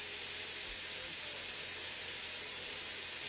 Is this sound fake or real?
fake